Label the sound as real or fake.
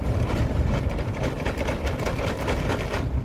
real